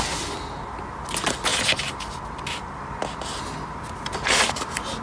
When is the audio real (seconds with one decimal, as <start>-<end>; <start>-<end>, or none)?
0.0-5.0